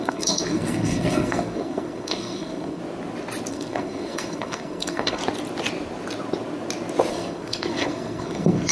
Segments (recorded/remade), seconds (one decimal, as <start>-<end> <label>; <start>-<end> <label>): 0.0-2.8 remade; 2.8-3.5 recorded; 3.5-5.2 remade; 5.2-7.1 recorded; 7.1-8.7 remade